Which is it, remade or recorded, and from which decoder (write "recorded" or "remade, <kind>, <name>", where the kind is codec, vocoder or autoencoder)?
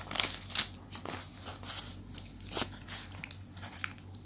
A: recorded